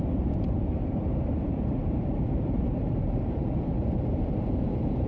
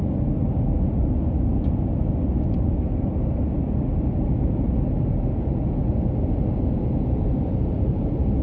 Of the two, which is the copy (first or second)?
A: first